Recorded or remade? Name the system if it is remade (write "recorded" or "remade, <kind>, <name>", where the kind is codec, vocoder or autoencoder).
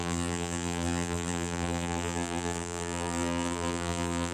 remade, vocoder, BigVGAN v2